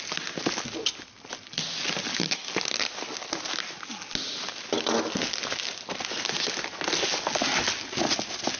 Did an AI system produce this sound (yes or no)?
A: no